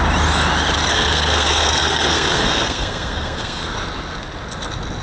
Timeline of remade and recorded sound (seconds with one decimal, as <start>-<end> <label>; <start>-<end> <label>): 0.0-0.9 recorded; 0.9-3.7 remade; 3.7-5.0 recorded